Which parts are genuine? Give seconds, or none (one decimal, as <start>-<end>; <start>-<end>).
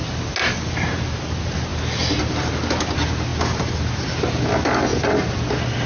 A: 0.0-5.9